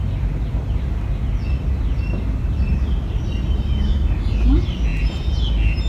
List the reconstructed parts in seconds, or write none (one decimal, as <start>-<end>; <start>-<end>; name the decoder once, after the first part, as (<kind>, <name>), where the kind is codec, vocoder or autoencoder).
4.9-5.5 (vocoder, Vocos)